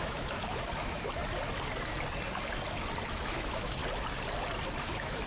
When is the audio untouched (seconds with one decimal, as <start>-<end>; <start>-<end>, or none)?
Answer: 1.2-3.1; 3.8-4.8